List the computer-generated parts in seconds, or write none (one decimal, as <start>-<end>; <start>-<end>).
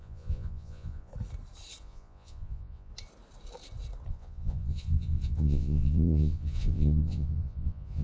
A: 0.0-1.1; 1.8-2.9; 4.1-8.0